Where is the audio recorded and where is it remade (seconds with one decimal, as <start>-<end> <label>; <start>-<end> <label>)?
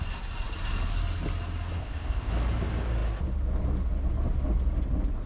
0.0-1.8 recorded; 1.8-2.3 remade; 2.3-5.3 recorded